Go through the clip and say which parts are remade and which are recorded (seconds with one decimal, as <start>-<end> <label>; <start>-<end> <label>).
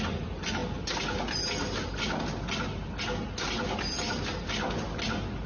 0.0-5.5 recorded